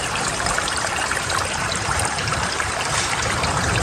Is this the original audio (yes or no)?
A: no